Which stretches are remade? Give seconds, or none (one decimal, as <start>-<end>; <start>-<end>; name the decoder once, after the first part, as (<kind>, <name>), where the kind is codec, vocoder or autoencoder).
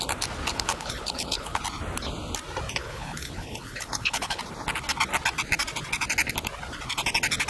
0.5-1.6 (codec, HILCodec); 2.8-4.4